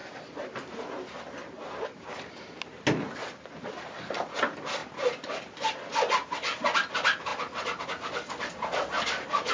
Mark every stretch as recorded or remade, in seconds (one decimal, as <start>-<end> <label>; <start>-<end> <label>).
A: 0.0-9.5 recorded